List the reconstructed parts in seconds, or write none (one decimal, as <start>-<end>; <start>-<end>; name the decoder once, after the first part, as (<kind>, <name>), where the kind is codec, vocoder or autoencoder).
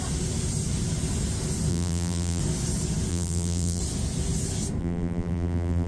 1.7-2.4 (vocoder, BigVGAN v2); 3.1-3.8; 4.8-5.9